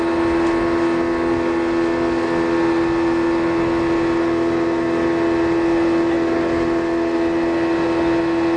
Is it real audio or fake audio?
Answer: real